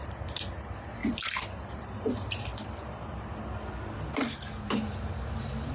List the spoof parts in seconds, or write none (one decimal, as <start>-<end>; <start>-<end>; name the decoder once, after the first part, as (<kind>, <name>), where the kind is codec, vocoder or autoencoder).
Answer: 0.0-1.0 (vocoder, BigVGAN v2); 1.7-2.5; 4.5-5.7